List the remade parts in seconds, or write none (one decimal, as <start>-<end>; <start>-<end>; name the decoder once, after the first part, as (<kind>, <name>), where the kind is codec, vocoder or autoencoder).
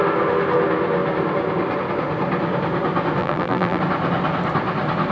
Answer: 3.2-3.8 (vocoder, BigVGAN v2)